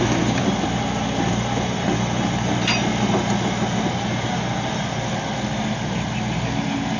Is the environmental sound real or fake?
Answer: real